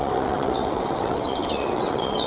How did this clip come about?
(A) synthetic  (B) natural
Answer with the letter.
A